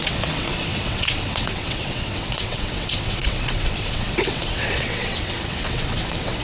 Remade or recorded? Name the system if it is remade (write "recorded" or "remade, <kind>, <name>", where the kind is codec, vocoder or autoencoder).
remade, vocoder, WaveNeXt